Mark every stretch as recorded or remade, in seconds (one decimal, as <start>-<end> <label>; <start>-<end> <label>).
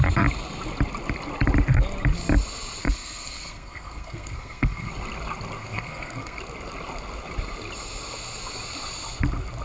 0.0-2.8 recorded; 2.8-4.9 remade; 4.9-5.6 recorded; 5.6-6.4 remade; 6.4-9.6 recorded